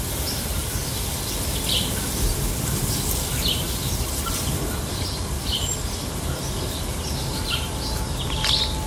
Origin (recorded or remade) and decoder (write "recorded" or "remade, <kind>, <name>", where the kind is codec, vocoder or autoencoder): recorded